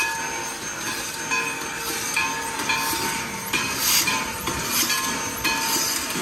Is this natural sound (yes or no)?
yes